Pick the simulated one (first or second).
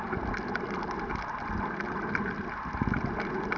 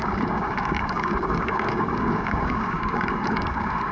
second